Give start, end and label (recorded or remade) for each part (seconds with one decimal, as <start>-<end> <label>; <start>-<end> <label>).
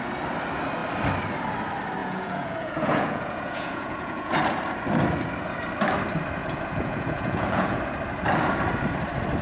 0.0-2.0 recorded; 2.0-4.3 remade; 4.3-6.4 recorded; 6.4-7.8 remade; 7.8-9.4 recorded